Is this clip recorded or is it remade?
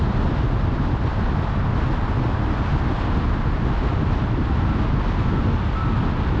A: recorded